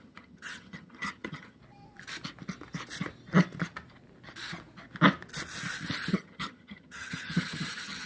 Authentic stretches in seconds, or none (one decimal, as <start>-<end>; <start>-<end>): 1.6-6.1